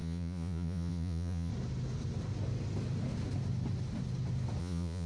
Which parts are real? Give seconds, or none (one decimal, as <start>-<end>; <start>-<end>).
1.5-4.6